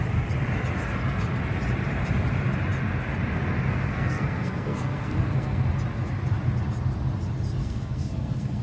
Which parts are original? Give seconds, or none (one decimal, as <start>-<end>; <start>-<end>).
0.0-3.7; 5.6-7.6

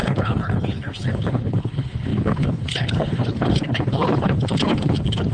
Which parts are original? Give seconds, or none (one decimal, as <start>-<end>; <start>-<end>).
none

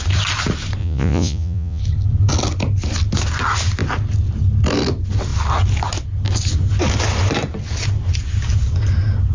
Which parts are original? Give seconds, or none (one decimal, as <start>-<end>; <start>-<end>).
0.0-0.8; 1.8-9.3

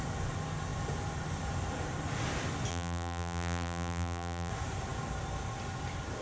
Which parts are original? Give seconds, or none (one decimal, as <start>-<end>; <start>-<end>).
0.0-2.7; 4.5-6.2

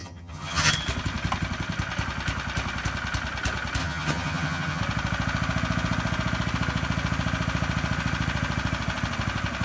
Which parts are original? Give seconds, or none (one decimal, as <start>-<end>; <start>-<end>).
0.7-3.8; 4.8-9.6